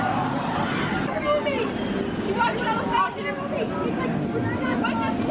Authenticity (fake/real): real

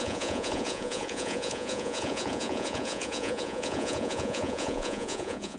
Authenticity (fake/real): fake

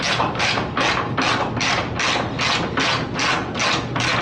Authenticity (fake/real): real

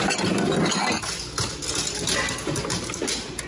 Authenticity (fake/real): real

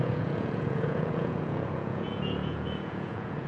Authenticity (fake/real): fake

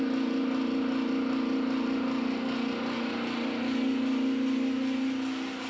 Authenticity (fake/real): real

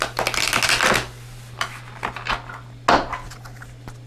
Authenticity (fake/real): real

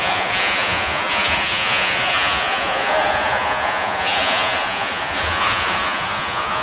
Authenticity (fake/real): fake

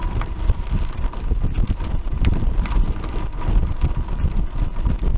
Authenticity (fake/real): real